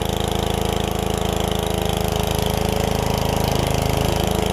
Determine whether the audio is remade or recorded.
recorded